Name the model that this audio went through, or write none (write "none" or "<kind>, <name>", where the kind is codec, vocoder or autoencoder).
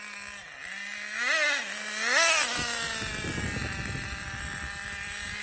none